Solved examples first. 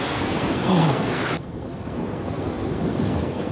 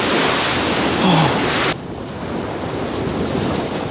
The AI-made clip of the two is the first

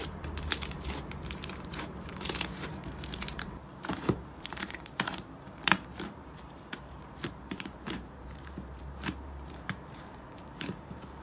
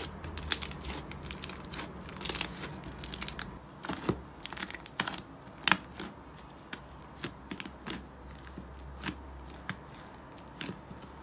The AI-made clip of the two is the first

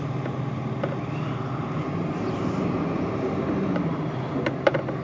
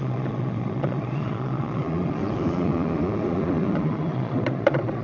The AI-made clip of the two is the second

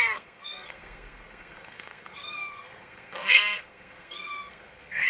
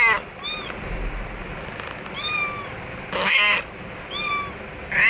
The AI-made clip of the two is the first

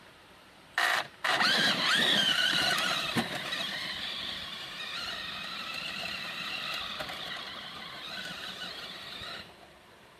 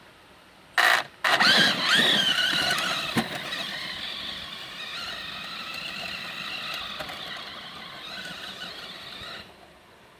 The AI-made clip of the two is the first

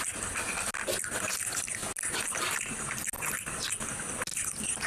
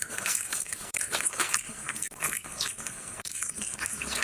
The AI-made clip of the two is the second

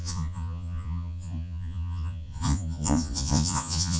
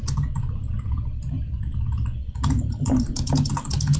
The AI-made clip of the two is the first